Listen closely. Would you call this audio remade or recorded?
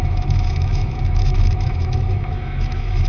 remade